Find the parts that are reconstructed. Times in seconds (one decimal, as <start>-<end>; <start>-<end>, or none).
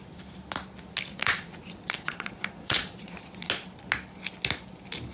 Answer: 1.1-3.5